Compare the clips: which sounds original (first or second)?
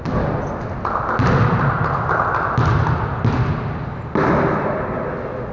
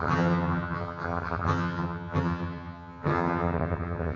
first